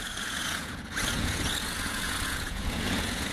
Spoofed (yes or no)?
yes